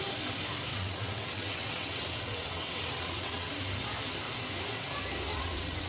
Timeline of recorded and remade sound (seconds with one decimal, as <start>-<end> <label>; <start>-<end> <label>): 0.0-0.7 recorded; 0.7-3.5 remade; 3.5-5.3 recorded; 5.3-5.9 remade